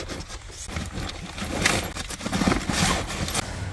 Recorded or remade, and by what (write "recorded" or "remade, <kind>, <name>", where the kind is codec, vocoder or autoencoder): recorded